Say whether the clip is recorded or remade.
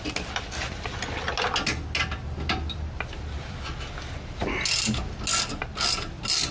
recorded